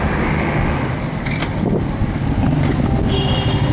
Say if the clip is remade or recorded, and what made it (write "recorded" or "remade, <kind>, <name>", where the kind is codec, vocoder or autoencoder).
recorded